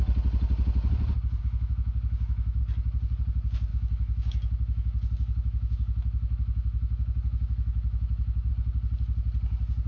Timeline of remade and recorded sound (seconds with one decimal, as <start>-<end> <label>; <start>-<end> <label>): 0.0-1.4 recorded; 1.4-2.6 remade; 2.6-3.7 recorded; 3.7-8.5 remade; 8.5-9.9 recorded